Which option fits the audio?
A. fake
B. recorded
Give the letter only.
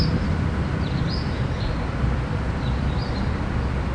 A